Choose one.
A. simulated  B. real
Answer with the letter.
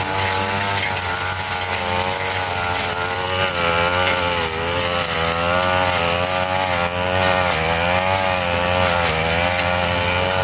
B